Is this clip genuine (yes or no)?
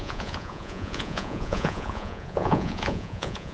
no